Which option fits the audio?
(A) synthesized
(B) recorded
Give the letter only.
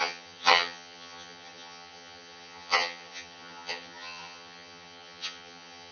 A